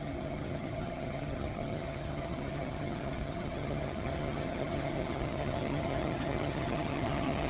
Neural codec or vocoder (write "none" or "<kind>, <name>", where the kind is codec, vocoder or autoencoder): vocoder, HiFi-GAN